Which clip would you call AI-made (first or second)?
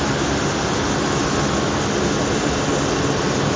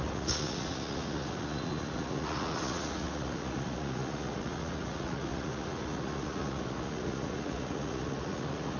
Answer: second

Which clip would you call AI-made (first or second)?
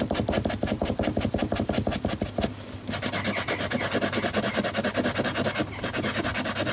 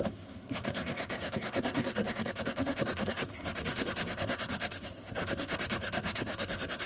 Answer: second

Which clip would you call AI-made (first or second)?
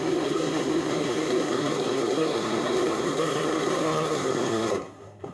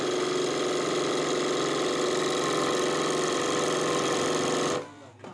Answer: first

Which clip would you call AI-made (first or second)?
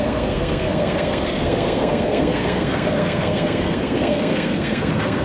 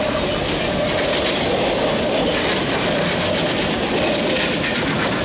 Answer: first